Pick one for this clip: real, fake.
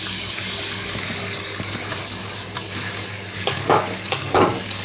fake